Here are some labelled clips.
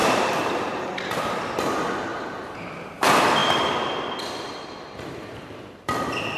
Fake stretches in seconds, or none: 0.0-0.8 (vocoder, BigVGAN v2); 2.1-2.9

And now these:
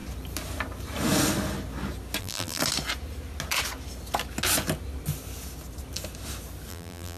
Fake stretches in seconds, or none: 2.2-2.6 (vocoder, BigVGAN v2); 6.7-7.2

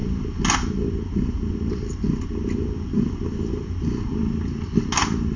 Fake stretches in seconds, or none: none

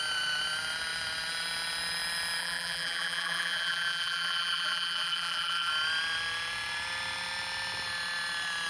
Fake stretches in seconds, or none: 2.4-5.7 (vocoder, BigVGAN v2)

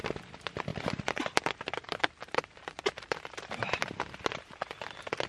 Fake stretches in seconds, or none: 0.7-3.2 (vocoder, BigVGAN v2)

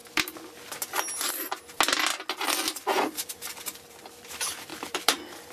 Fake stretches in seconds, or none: 3.3-5.5 (vocoder, BigVGAN v2)